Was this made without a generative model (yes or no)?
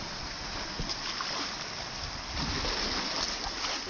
yes